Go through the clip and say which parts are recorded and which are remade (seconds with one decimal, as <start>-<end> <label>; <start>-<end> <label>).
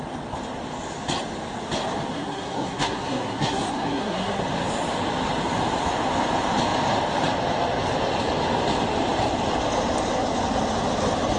0.0-2.1 recorded; 2.1-4.4 remade; 4.4-11.4 recorded